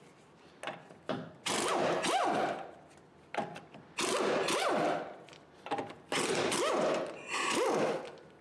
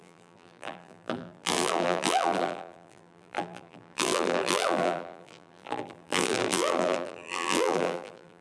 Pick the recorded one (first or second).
first